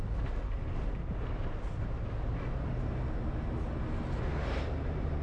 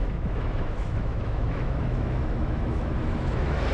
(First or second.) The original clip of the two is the first